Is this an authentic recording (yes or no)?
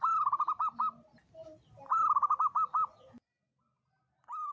yes